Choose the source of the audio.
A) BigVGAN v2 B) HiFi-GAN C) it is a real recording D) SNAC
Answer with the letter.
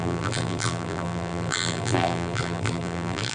A